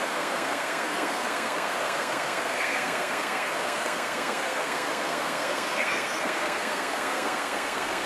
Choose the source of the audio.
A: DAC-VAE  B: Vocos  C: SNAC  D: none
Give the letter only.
C